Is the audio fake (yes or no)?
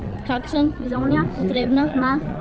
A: yes